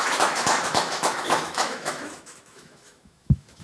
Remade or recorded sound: remade